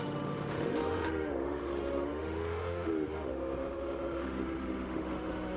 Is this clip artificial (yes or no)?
yes